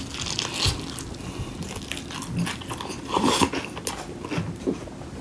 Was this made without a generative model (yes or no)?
yes